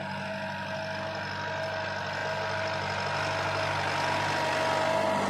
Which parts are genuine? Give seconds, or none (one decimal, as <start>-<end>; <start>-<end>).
0.0-5.3